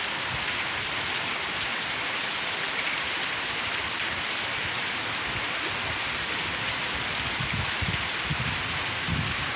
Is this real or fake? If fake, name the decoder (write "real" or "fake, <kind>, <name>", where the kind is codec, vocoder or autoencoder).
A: real